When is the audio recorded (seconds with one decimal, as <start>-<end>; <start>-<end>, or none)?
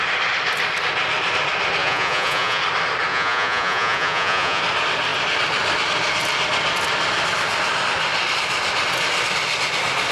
0.0-1.8; 2.6-3.1; 4.6-10.1